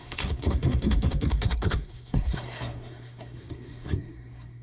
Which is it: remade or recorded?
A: remade